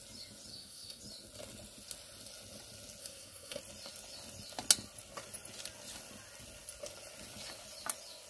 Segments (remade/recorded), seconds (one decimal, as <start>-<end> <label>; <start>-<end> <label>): 0.0-0.5 recorded; 0.5-1.0 remade; 1.0-3.0 recorded; 3.0-3.6 remade; 3.6-8.3 recorded